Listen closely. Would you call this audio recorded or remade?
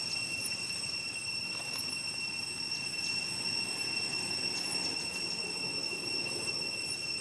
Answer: recorded